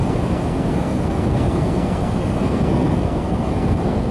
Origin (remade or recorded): remade